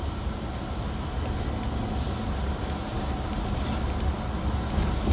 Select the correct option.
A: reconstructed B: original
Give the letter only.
B